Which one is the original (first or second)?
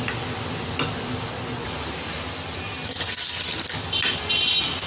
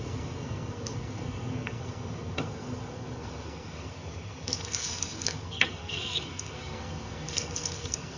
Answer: first